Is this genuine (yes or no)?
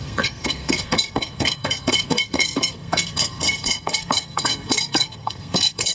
no